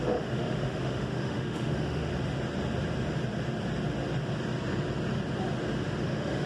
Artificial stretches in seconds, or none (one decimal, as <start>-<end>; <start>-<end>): 0.0-2.1; 6.0-6.5